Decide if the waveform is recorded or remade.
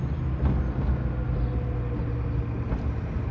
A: recorded